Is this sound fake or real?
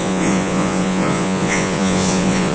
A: fake